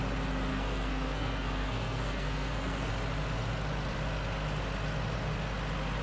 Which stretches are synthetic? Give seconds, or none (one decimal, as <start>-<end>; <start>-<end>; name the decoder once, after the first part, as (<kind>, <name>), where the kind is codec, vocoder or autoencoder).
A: 0.5-2.9 (codec, SNAC)